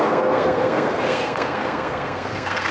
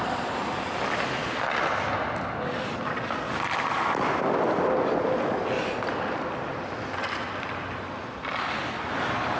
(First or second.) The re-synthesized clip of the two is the first